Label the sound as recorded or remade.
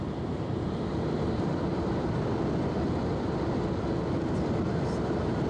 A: recorded